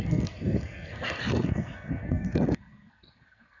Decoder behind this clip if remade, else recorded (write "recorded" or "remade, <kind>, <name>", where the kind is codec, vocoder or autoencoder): remade, codec, SNAC